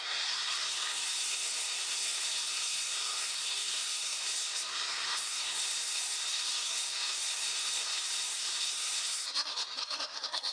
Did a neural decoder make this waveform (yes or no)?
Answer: yes